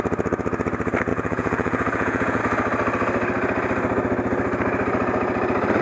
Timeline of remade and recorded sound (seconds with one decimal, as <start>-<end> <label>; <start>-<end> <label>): 0.0-1.1 recorded; 1.1-2.4 remade; 2.4-5.8 recorded